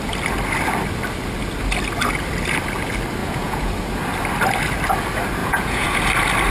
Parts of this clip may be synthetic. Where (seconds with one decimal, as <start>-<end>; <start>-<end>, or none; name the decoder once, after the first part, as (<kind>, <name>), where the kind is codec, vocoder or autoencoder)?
3.2-3.7 (vocoder, Vocos); 5.4-6.0